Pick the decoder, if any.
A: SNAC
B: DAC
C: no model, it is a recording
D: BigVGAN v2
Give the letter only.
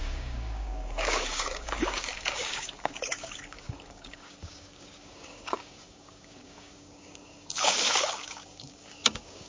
B